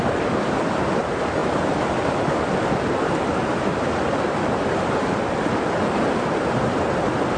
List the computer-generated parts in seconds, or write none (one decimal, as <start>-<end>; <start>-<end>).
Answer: none